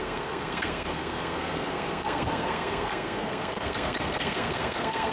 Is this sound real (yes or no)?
no